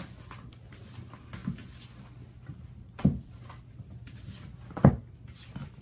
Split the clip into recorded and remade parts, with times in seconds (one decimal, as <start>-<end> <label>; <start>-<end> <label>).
0.0-5.8 recorded